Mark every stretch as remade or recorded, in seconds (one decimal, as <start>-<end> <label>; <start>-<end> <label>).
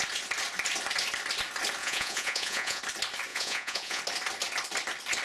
0.0-1.8 recorded; 1.8-2.8 remade; 2.8-3.3 recorded; 3.3-4.0 remade; 4.0-5.2 recorded